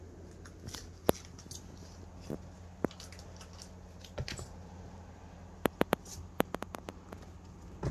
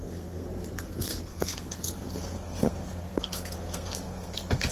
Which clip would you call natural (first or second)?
first